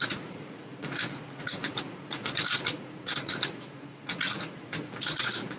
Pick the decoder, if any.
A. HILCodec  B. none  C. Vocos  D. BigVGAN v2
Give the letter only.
C